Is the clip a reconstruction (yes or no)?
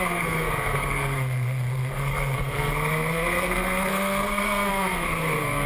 yes